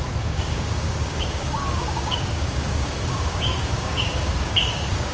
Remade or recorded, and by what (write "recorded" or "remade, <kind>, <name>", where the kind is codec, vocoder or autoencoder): remade, codec, DAC